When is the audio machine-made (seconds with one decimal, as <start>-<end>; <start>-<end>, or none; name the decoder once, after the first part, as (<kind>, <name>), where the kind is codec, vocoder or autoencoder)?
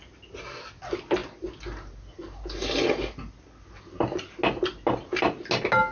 none